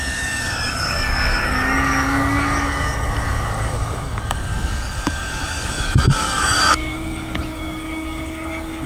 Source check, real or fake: fake